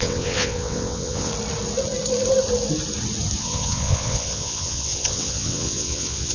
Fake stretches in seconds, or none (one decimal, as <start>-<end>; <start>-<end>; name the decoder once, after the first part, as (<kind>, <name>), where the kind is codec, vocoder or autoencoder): 0.0-1.3 (vocoder, WaveNeXt); 3.4-6.3